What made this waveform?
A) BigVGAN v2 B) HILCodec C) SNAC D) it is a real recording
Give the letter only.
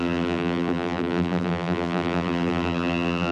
A